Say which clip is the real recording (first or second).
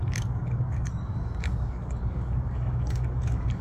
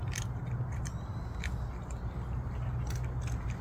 second